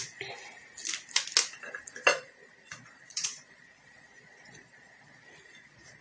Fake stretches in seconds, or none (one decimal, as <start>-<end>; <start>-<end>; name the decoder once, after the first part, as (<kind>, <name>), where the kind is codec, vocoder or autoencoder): 2.1-6.0 (vocoder, Vocos)